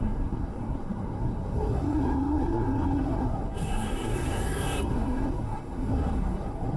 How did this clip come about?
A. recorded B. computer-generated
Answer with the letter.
B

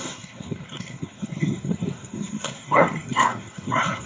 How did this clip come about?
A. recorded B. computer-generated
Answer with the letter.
B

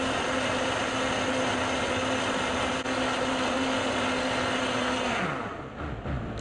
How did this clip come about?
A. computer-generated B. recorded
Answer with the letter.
B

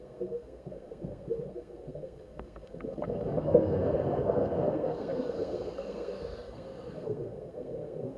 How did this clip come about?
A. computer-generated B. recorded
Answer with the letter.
A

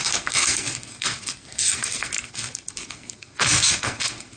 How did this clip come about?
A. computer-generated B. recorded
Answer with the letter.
A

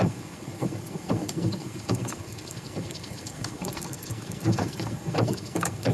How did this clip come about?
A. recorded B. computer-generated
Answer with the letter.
B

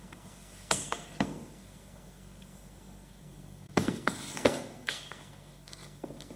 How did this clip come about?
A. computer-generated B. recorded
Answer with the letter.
A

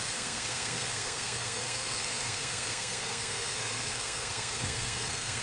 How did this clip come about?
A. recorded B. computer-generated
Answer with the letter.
B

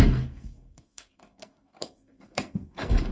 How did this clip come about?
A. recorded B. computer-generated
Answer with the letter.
B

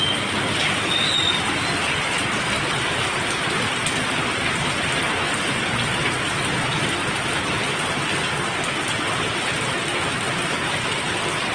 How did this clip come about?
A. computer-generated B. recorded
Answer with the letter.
B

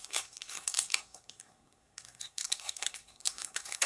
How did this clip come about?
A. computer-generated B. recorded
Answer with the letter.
A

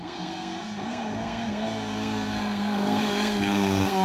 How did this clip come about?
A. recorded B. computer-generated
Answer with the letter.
B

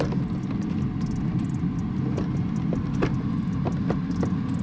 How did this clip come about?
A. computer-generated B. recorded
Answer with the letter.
B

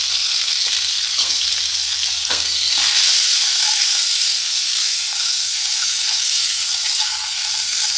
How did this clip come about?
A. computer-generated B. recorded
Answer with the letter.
A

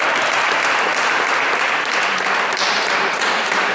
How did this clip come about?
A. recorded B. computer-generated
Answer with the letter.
A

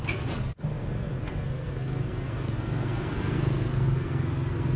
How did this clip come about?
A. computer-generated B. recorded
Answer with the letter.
A